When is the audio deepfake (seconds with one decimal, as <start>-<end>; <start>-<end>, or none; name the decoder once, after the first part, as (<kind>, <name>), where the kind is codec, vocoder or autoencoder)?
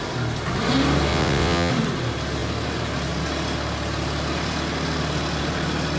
1.1-1.7 (vocoder, WaveNeXt)